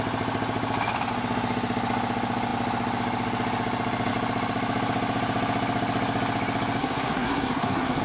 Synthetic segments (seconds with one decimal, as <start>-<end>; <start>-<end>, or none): 6.8-8.0

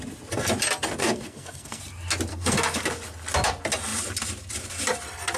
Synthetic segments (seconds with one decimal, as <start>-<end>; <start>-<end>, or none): 1.0-1.8; 2.3-2.8